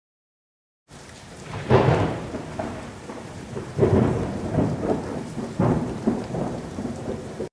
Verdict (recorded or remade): remade